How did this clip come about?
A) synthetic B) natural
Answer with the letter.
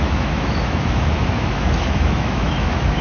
A